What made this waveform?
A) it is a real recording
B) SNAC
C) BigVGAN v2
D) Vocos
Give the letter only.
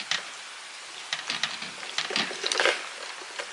A